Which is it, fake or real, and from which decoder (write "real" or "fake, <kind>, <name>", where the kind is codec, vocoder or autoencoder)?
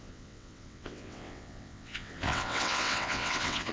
fake, vocoder, WaveNeXt